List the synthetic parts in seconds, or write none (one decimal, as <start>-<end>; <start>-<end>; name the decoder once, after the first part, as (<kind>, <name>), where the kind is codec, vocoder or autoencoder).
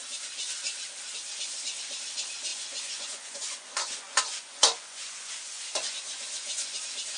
2.5-6.8 (vocoder, Vocos)